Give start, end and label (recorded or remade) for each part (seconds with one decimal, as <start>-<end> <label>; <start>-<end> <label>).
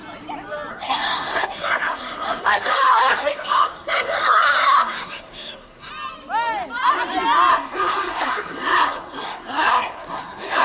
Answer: 0.0-0.7 recorded; 0.7-5.9 remade; 5.9-7.5 recorded; 7.5-10.6 remade